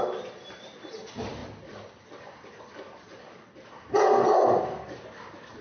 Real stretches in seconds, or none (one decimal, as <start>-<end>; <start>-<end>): 0.0-5.6